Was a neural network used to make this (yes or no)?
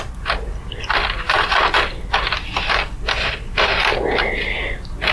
no